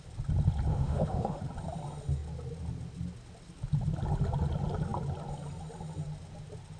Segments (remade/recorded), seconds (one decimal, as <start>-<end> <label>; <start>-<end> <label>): 0.0-0.7 recorded; 0.7-1.4 remade; 1.4-6.8 recorded